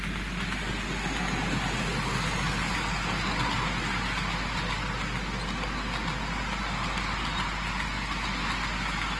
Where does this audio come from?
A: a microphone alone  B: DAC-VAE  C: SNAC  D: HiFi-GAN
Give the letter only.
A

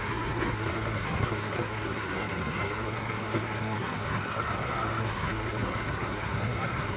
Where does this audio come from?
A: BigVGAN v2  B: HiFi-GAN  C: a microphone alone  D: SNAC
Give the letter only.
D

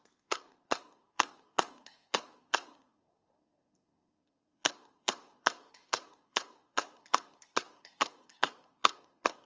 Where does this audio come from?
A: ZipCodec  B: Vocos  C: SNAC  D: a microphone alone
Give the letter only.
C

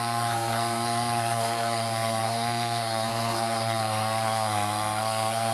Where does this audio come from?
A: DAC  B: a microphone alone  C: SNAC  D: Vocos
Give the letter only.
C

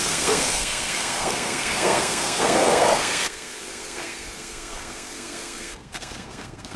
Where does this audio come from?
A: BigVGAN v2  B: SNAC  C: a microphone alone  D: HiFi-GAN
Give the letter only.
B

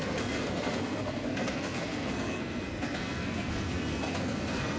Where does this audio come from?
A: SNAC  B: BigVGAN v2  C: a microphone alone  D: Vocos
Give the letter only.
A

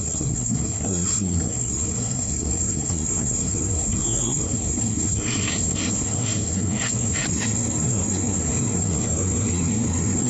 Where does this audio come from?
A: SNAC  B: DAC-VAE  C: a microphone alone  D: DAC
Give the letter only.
A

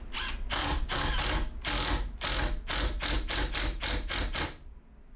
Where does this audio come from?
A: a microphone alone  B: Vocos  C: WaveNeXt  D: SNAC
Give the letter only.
A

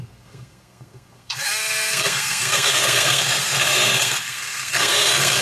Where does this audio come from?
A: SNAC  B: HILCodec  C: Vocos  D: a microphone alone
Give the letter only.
A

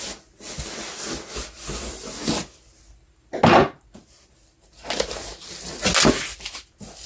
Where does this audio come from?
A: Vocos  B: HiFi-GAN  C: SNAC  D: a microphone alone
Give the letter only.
D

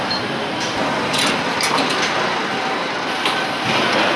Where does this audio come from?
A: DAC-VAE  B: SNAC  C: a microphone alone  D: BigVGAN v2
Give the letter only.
C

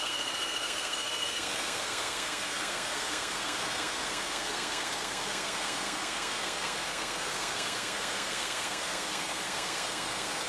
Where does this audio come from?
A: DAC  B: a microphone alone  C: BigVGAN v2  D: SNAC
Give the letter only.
D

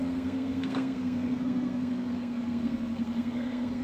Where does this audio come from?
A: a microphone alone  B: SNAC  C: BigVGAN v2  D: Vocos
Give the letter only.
B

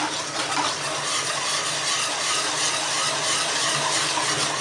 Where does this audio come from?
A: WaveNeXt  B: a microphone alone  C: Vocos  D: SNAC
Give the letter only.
B